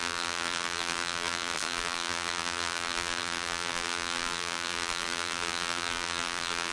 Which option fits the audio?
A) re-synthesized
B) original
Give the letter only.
A